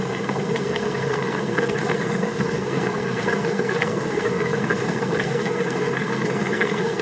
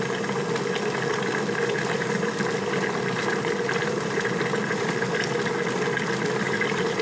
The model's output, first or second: first